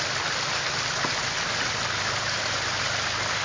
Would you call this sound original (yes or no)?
yes